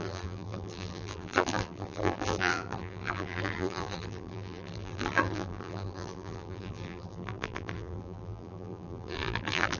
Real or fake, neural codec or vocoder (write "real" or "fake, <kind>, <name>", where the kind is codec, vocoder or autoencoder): fake, vocoder, BigVGAN v2